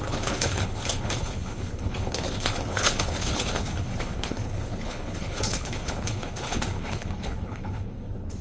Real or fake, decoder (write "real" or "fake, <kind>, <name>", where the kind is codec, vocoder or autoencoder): fake, codec, HILCodec